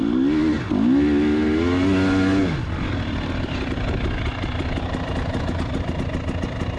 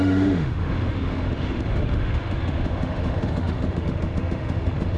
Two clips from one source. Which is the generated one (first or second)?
second